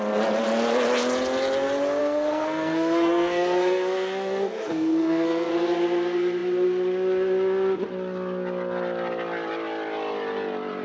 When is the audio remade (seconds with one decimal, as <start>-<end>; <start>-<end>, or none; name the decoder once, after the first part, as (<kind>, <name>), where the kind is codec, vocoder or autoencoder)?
2.0-5.5 (codec, SNAC)